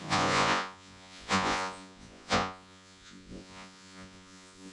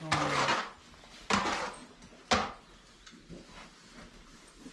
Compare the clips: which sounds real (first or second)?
second